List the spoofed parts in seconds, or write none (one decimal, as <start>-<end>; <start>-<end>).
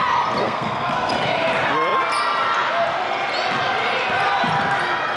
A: 0.4-1.1